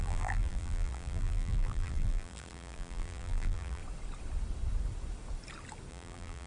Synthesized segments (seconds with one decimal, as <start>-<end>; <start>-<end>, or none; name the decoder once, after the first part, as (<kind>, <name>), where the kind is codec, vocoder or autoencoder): 0.0-3.8 (vocoder, BigVGAN v2); 5.9-6.5